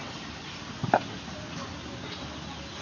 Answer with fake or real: real